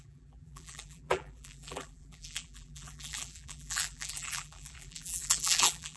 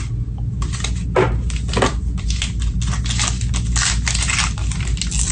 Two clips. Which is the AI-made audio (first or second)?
first